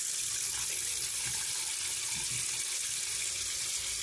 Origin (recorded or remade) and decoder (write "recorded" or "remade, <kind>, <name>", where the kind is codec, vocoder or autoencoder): recorded